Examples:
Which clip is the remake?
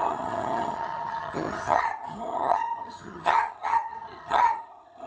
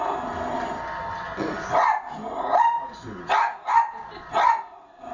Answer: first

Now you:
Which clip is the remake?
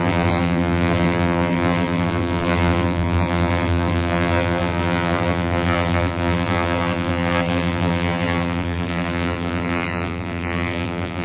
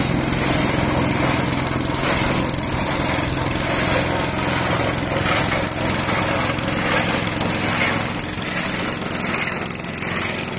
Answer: first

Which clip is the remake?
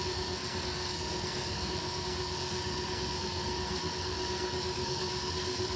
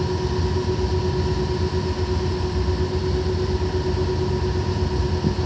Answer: first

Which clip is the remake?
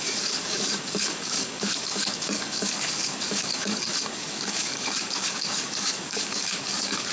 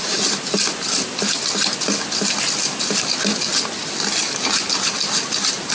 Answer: first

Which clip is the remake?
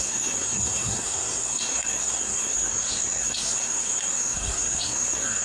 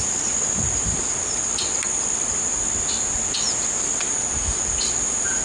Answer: first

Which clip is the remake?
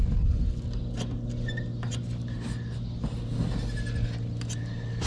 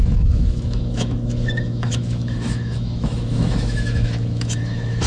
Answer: second